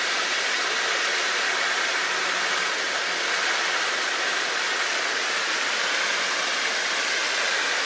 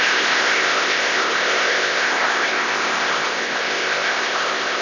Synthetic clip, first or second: second